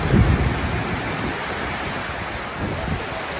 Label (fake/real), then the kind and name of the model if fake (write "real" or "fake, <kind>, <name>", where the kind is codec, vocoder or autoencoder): real